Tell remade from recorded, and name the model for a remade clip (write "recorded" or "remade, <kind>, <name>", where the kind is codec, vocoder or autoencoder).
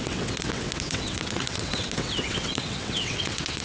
remade, vocoder, WaveNeXt